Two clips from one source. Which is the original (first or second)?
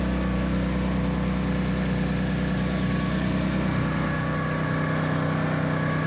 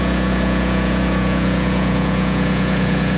first